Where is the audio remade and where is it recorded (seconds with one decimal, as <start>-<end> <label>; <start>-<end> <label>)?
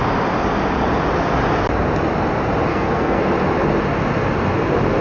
0.0-2.7 recorded; 2.7-3.2 remade; 3.2-5.0 recorded